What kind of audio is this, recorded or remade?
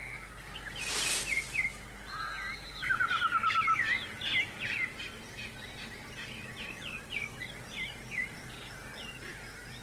recorded